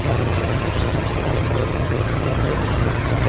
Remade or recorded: remade